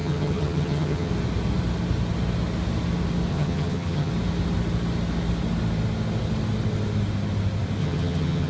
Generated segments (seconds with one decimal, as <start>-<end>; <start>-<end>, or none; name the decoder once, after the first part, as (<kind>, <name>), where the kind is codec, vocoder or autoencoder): 0.0-1.1 (vocoder, HiFi-GAN); 3.3-4.1; 7.8-8.5